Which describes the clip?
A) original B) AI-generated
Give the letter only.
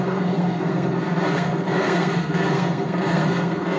B